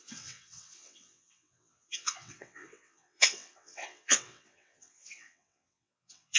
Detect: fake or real fake